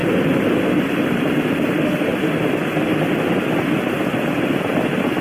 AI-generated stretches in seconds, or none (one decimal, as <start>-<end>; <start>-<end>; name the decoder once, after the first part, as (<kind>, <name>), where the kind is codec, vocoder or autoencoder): 0.0-2.1 (vocoder, BigVGAN v2); 3.3-5.2